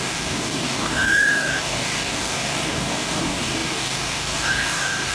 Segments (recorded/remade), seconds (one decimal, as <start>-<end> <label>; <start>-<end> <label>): 0.0-5.1 remade